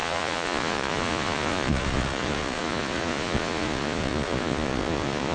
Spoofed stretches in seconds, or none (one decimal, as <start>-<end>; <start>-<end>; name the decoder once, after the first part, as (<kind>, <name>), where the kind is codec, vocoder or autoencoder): 0.0-5.3 (vocoder, Vocos)